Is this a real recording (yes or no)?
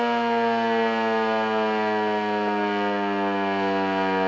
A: yes